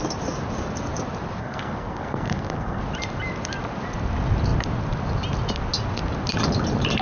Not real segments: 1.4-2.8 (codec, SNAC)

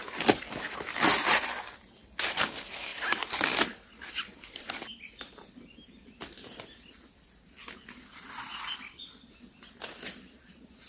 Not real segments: none

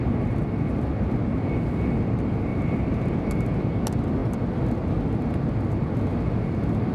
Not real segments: 2.5-3.3 (vocoder, BigVGAN v2)

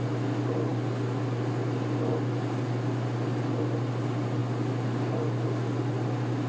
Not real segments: none

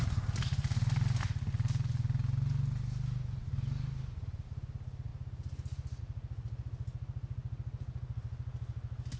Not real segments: none

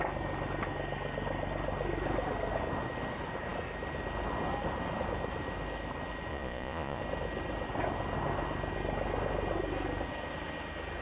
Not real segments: 6.3-7.0 (vocoder, Vocos)

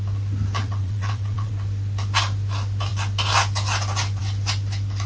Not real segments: 0.6-1.5 (vocoder, WaveNeXt)